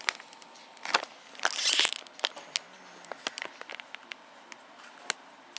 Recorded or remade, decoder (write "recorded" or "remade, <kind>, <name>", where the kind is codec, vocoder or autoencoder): recorded